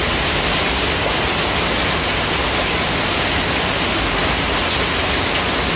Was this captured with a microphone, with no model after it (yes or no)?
yes